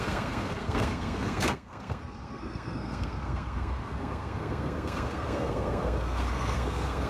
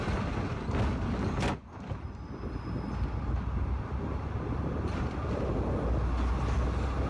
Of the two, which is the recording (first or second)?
second